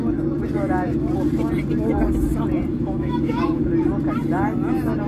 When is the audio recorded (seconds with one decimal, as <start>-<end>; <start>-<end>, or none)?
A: 0.0-2.7; 3.6-5.1